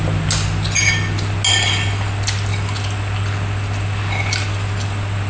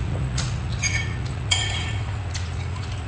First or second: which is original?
first